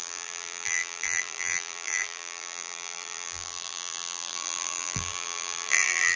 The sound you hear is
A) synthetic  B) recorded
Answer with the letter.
A